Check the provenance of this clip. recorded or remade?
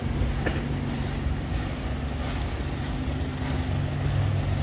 recorded